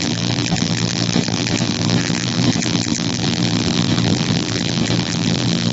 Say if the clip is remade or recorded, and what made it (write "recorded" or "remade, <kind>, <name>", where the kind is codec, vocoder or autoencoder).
remade, vocoder, BigVGAN v2